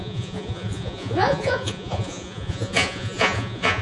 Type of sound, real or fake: fake